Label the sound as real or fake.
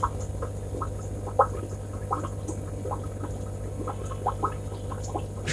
real